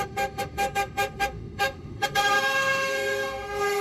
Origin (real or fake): fake